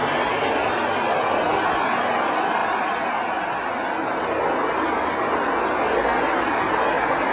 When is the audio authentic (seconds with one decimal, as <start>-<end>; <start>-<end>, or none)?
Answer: 0.0-7.3